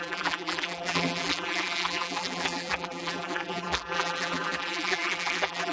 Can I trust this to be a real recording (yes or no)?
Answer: no